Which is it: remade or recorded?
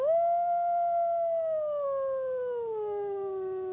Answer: recorded